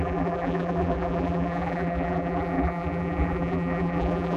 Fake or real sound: fake